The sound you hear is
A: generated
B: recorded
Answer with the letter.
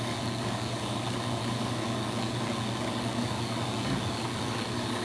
A